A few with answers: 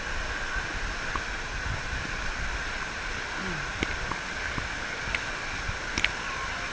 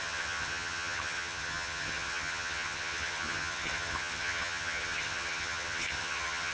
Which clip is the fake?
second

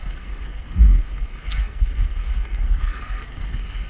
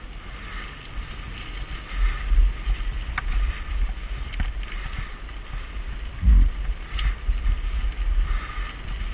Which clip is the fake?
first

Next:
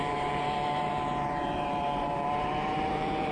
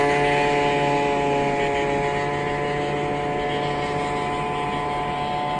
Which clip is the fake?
first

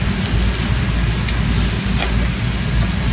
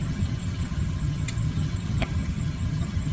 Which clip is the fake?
second